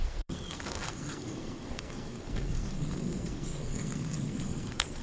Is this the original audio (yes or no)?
no